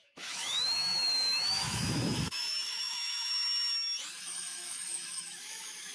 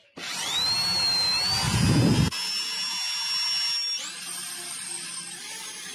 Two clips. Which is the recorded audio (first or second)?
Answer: second